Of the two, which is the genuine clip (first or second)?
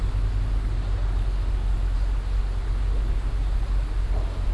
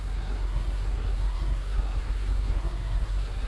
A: first